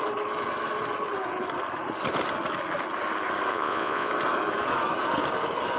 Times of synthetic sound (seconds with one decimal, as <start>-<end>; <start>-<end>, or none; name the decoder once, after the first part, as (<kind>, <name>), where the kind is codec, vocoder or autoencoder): 3.5-4.1 (vocoder, Vocos)